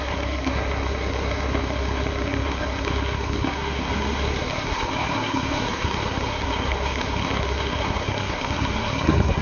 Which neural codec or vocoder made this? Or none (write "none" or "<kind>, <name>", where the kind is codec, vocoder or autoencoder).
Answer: codec, SNAC